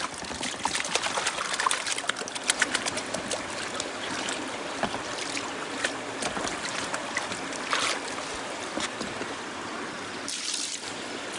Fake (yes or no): no